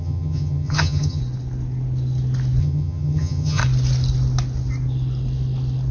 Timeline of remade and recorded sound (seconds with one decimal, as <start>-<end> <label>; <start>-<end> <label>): 0.0-1.2 remade; 1.2-2.6 recorded; 2.6-3.6 remade; 3.6-5.9 recorded